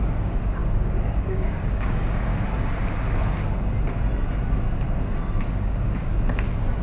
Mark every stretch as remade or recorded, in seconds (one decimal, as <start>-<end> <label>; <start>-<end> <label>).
0.0-2.3 remade; 2.3-5.5 recorded; 5.5-6.8 remade